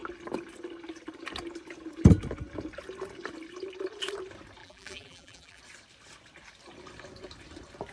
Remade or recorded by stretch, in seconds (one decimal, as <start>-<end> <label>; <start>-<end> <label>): 0.0-4.6 recorded; 4.6-5.6 remade; 5.6-7.9 recorded